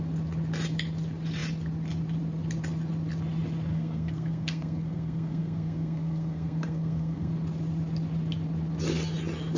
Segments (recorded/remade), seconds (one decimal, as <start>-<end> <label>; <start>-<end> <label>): 0.0-3.7 recorded; 3.7-7.3 remade; 7.3-9.6 recorded